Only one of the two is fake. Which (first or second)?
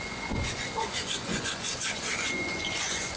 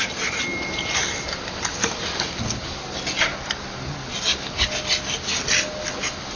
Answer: first